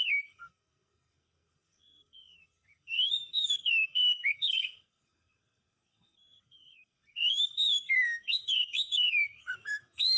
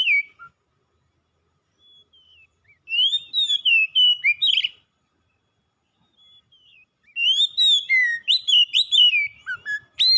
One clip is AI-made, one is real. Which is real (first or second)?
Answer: second